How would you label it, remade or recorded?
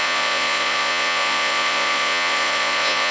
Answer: remade